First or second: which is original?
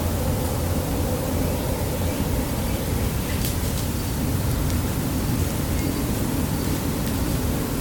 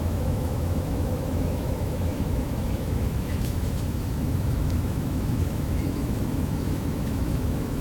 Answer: first